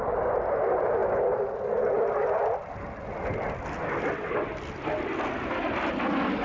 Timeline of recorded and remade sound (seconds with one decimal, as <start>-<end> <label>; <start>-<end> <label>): 0.0-6.4 recorded